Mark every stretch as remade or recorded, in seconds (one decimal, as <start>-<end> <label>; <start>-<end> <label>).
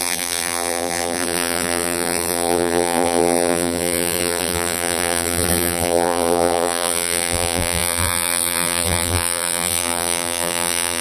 0.0-11.0 remade